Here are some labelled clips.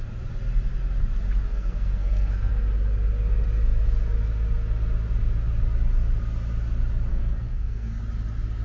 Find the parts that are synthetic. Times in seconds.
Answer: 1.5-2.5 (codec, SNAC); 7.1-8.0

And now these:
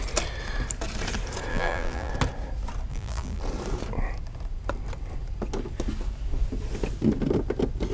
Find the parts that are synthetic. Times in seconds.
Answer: 1.5-2.1 (vocoder, BigVGAN v2); 2.9-3.4

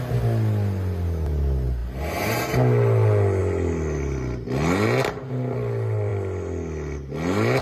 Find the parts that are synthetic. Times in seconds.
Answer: none

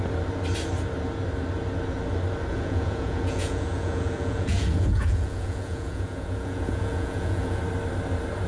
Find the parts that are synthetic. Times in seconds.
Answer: 2.5-7.6 (vocoder, Vocos)

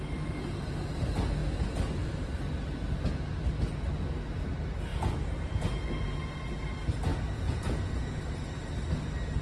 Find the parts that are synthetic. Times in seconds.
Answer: 4.9-6.6 (vocoder, Vocos); 7.1-8.2

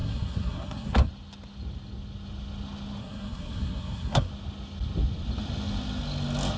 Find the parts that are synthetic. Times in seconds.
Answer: 0.0-1.1 (codec, SNAC); 3.0-4.3

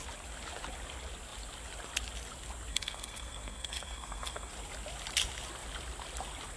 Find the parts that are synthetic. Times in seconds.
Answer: 2.7-4.5 (codec, SNAC)